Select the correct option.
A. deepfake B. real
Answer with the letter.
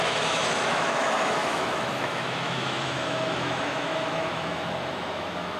A